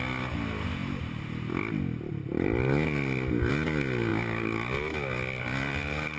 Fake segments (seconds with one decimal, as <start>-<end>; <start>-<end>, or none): none